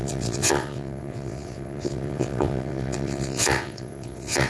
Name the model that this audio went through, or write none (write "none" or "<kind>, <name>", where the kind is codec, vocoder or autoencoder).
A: vocoder, WaveNeXt